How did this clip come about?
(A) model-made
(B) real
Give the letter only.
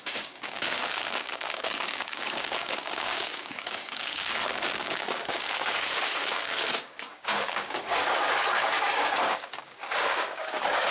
A